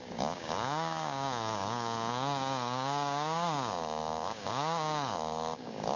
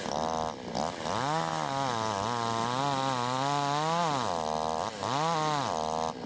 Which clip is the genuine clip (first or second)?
second